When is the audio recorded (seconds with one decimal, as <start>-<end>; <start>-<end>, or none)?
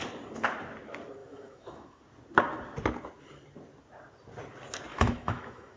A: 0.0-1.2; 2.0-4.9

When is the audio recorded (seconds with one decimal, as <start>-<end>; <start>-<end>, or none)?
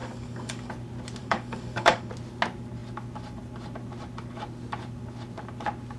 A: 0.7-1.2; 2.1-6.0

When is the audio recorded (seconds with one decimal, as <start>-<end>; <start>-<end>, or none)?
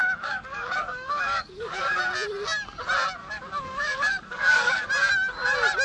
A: 2.0-3.2; 4.9-5.8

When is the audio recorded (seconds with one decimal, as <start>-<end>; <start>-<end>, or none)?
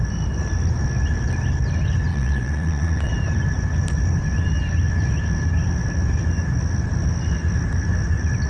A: 0.0-2.1; 3.1-8.5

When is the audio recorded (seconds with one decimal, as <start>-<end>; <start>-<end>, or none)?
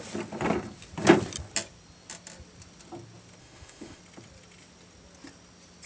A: 0.0-3.4; 4.0-5.9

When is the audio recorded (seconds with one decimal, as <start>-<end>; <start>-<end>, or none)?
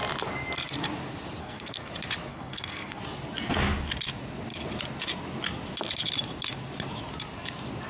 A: 0.0-1.4; 1.9-2.3; 3.0-7.9